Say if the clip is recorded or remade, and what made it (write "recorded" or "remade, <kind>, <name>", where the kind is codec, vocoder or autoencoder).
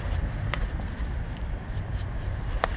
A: remade, vocoder, BigVGAN v2